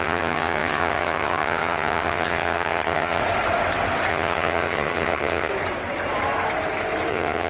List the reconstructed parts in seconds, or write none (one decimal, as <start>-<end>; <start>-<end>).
0.0-3.2; 4.1-5.5; 7.1-7.5